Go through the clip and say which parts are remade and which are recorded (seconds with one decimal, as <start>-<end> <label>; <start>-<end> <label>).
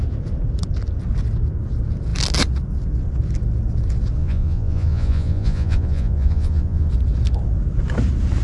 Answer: 0.0-4.2 recorded; 4.2-6.9 remade; 6.9-8.4 recorded